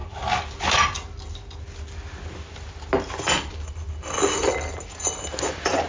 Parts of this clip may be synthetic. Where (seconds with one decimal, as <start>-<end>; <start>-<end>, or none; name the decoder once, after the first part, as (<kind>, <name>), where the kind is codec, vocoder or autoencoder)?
none